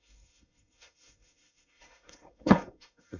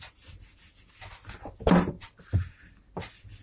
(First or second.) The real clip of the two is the second